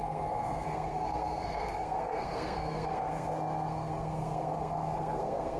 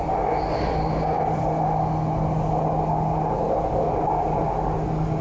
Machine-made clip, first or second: first